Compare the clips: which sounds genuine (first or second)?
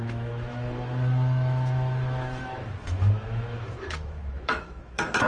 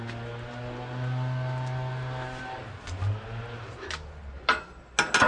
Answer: second